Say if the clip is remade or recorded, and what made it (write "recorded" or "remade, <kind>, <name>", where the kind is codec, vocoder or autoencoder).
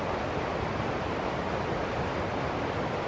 recorded